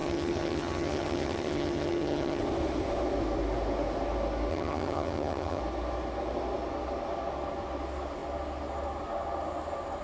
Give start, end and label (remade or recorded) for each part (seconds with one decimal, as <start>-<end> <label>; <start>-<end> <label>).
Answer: 0.0-2.4 remade; 2.4-4.5 recorded; 4.5-5.6 remade; 5.6-10.0 recorded